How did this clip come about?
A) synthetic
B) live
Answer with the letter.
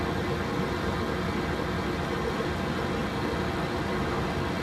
B